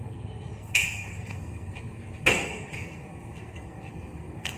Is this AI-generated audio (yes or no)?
yes